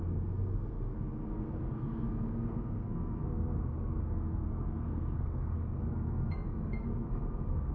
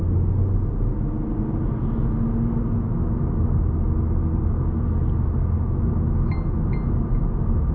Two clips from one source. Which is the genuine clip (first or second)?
second